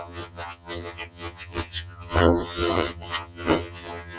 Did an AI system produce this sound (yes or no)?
yes